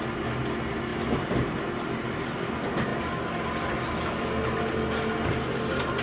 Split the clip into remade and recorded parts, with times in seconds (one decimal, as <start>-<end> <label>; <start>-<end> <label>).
0.0-0.9 recorded; 0.9-1.9 remade; 1.9-6.0 recorded